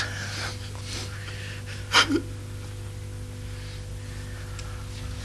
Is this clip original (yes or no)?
yes